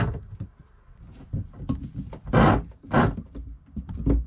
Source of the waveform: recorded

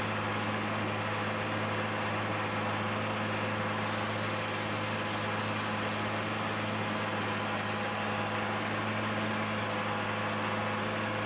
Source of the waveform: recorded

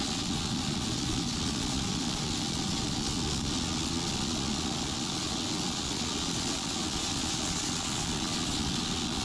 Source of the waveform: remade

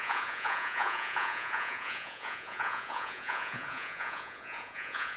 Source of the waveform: remade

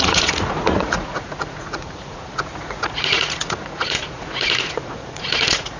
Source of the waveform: remade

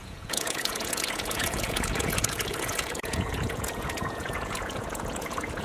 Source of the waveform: remade